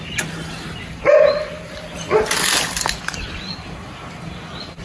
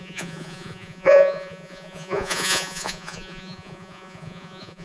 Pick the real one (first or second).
first